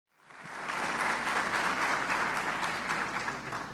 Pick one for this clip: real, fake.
real